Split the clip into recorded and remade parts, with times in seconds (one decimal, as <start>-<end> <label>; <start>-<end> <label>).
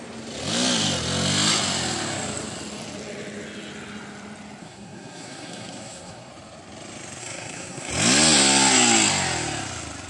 0.0-4.6 recorded; 4.6-6.3 remade; 6.3-7.2 recorded; 7.2-7.9 remade; 7.9-10.1 recorded